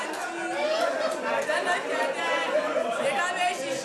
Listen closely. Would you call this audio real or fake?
real